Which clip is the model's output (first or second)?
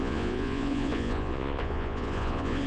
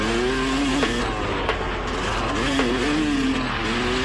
first